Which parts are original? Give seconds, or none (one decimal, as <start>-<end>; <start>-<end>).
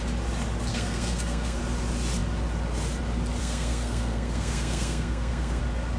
0.0-0.7; 1.6-3.4; 5.6-6.0